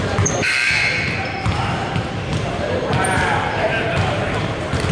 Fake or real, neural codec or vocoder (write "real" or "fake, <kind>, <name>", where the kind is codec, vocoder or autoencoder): fake, vocoder, BigVGAN v2